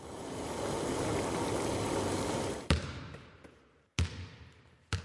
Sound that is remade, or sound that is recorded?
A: recorded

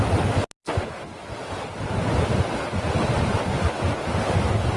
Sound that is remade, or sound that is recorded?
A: recorded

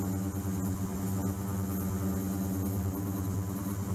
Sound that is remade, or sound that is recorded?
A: recorded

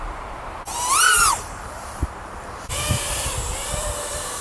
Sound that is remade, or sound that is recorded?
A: remade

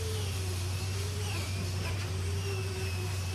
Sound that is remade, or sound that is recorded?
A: remade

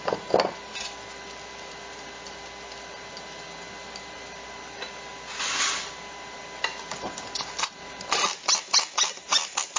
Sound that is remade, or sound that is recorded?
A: recorded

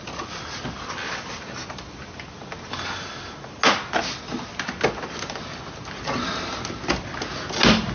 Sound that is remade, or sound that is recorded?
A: recorded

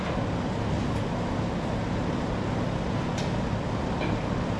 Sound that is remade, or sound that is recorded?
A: recorded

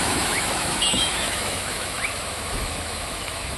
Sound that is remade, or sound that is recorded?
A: remade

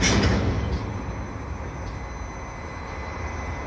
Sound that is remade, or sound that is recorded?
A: recorded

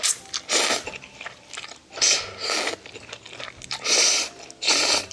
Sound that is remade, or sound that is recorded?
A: recorded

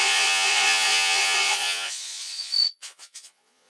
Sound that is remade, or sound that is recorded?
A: remade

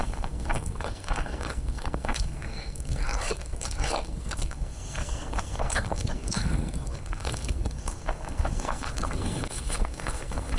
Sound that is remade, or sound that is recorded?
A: remade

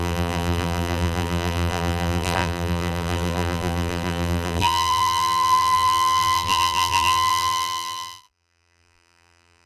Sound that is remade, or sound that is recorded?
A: remade